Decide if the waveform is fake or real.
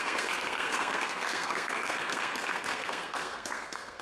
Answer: fake